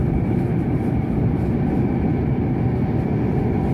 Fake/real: real